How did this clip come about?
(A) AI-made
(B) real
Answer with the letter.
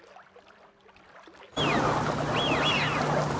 B